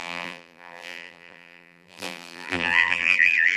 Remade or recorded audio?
remade